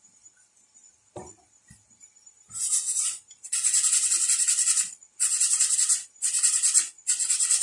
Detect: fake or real real